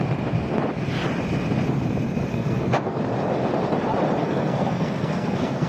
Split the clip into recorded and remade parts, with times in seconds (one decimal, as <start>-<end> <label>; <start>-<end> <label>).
0.0-2.3 recorded; 2.3-3.0 remade; 3.0-4.2 recorded; 4.2-5.7 remade